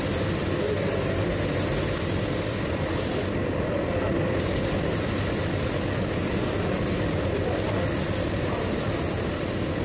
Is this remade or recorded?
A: recorded